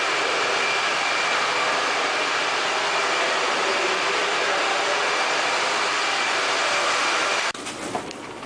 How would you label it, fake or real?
fake